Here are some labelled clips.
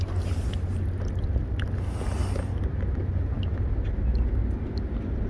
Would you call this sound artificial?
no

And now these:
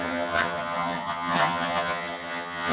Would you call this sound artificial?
yes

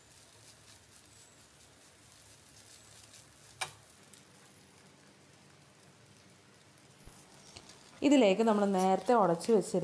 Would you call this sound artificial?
no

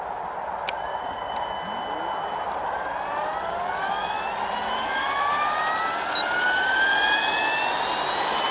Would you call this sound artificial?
no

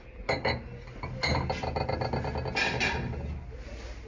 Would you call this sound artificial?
no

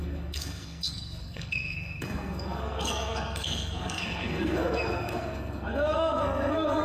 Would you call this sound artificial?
yes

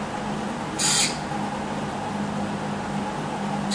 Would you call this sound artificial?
no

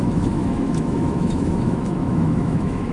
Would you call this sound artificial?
yes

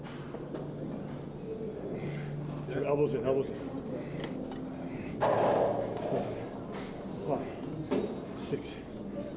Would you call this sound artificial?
no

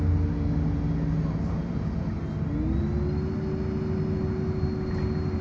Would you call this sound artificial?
no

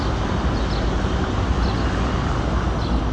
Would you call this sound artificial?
no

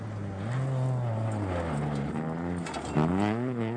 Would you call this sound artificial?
no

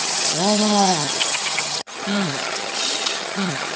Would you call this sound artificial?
yes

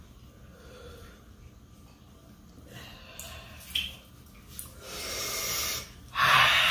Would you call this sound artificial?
no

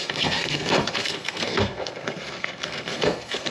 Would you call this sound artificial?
yes